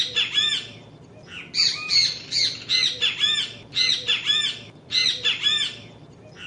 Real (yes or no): yes